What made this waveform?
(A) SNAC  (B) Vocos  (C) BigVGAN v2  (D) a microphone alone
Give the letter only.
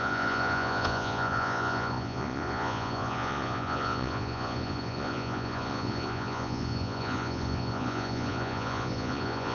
B